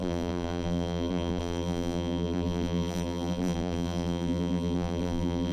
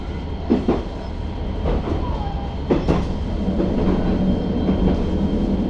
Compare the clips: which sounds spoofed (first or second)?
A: first